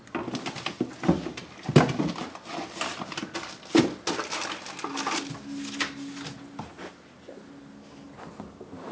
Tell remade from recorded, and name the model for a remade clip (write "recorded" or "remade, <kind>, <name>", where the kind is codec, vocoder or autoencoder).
recorded